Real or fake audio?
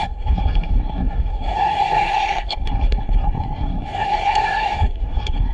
fake